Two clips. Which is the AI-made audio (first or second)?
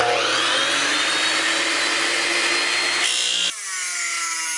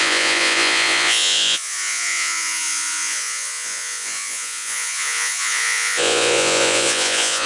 second